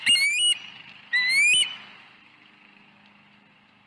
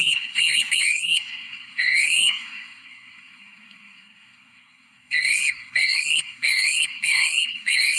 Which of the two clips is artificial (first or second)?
second